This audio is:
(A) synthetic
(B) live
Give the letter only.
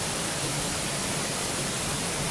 B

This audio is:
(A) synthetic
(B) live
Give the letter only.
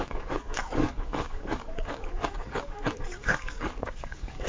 A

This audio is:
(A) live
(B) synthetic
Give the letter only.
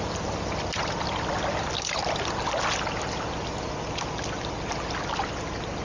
A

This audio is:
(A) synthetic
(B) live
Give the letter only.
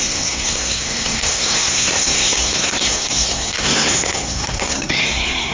A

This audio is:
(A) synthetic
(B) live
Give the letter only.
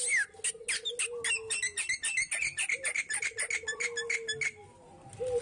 B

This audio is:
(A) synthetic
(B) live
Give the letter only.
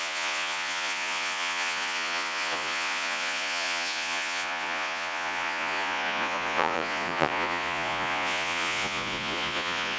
A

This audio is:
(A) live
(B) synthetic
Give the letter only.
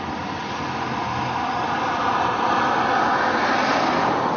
A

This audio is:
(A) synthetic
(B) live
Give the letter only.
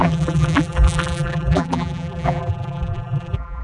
A